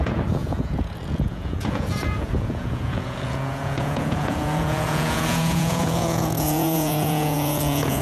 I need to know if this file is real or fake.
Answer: fake